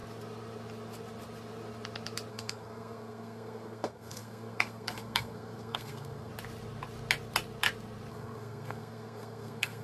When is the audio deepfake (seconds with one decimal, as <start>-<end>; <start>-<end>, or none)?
2.3-6.3; 8.1-9.8